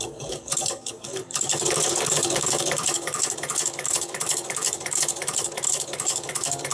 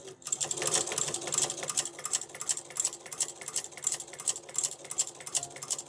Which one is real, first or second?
second